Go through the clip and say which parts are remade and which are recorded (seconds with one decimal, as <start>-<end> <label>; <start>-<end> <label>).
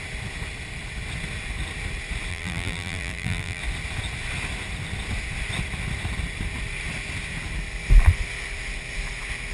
0.0-2.3 recorded; 2.3-3.6 remade; 3.6-9.5 recorded